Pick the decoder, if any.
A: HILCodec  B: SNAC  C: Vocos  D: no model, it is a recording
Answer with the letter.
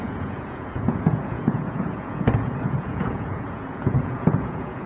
C